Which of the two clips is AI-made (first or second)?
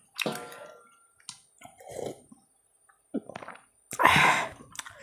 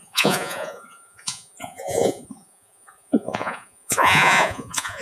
second